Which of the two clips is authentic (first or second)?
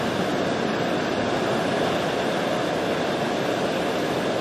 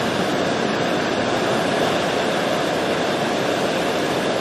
first